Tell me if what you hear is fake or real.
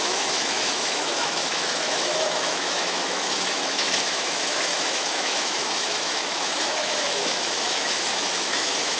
fake